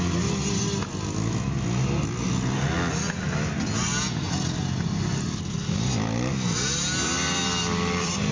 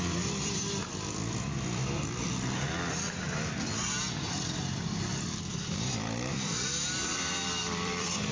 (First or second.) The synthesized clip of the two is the second